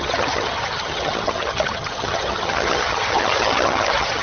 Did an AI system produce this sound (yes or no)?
yes